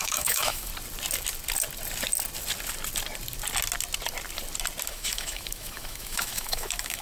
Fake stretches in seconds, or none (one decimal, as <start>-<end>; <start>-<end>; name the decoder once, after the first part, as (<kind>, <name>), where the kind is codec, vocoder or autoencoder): 0.0-0.7 (autoencoder, DAC-VAE); 4.9-7.0